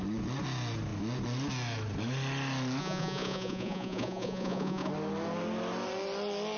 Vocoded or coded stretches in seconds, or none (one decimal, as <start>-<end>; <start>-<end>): 2.8-4.9